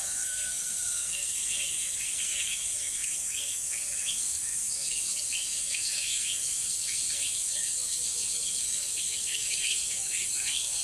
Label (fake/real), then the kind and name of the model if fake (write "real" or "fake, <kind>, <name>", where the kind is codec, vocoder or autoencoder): fake, codec, SNAC